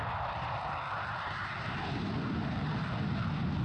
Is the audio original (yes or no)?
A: yes